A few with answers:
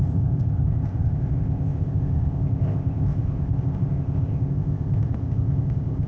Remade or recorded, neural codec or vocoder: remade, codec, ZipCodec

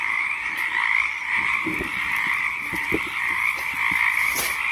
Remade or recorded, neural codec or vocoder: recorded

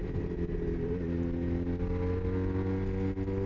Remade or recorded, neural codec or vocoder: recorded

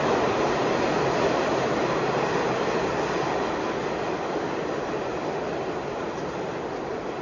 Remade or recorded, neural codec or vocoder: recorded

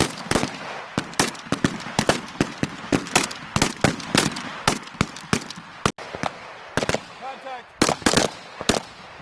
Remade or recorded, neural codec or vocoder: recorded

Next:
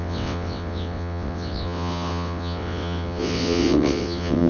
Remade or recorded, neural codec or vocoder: remade, vocoder, WaveNeXt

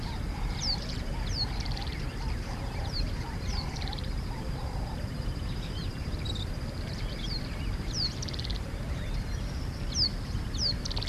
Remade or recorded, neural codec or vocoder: remade, vocoder, BigVGAN v2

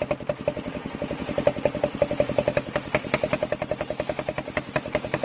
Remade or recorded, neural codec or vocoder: recorded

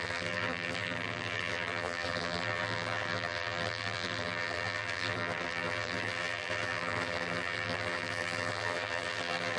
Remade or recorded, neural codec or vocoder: remade, vocoder, BigVGAN v2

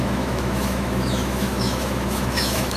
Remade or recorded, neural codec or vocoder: remade, autoencoder, DAC-VAE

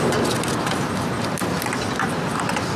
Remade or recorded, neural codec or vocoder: recorded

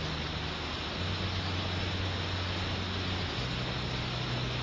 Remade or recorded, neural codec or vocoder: recorded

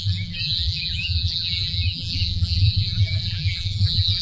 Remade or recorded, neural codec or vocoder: remade, vocoder, BigVGAN v2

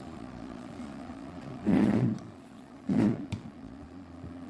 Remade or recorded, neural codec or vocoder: remade, vocoder, Vocos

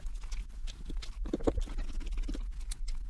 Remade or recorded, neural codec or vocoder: recorded